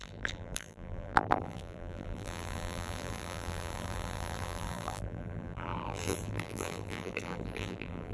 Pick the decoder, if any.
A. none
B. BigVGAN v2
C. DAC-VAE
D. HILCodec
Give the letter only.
B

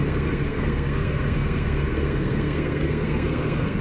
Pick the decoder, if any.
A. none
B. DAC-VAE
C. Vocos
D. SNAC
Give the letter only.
D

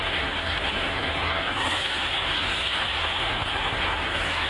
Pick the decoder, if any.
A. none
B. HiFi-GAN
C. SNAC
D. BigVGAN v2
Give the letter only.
C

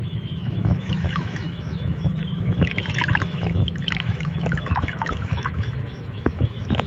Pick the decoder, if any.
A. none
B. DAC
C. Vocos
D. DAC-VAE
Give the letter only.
D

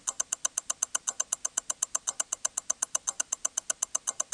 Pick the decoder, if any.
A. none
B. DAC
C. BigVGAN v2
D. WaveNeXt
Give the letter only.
A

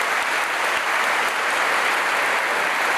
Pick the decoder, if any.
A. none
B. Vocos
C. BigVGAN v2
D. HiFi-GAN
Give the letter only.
A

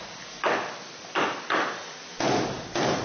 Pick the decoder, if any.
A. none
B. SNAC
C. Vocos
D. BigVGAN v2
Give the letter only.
A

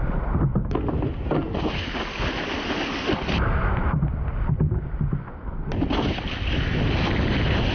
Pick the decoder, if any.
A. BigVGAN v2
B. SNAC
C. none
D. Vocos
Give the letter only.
C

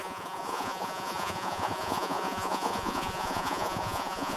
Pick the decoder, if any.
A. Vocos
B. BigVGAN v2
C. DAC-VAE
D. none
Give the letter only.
A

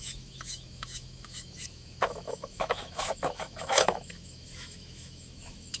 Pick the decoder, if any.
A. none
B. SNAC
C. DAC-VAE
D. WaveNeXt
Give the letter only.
C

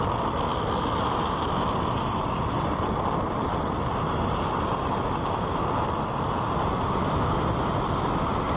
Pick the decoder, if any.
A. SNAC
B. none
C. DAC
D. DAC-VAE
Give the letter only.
B